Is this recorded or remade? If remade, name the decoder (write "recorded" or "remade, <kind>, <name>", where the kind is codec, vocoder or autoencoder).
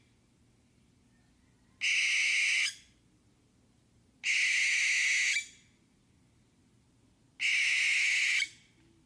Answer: recorded